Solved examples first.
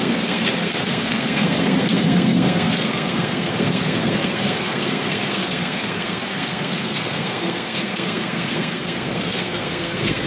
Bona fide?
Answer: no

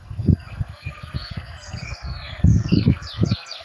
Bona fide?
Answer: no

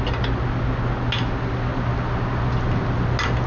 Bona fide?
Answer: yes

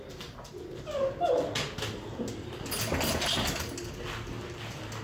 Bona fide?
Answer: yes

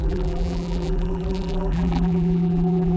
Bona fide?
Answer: no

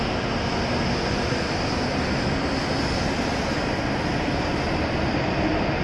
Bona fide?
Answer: yes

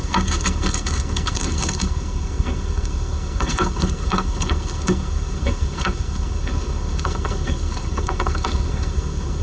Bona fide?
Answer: no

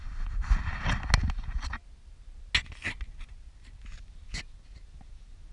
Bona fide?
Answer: yes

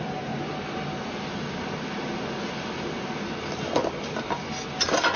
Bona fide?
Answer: yes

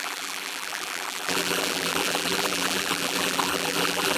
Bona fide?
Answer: no